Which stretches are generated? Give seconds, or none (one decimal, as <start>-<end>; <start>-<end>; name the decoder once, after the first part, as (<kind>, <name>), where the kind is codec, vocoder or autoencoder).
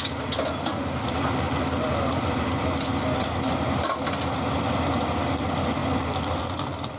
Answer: none